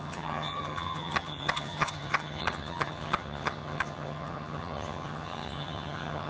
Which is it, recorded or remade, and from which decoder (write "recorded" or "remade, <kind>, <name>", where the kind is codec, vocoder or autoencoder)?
remade, vocoder, HiFi-GAN